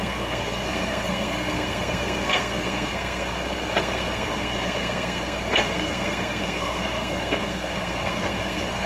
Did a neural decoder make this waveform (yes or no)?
yes